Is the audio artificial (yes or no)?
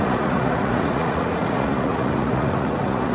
yes